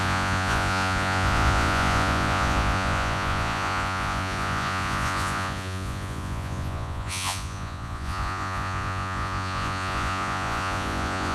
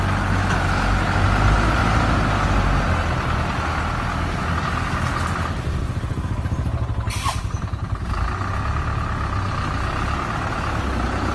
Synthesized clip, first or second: first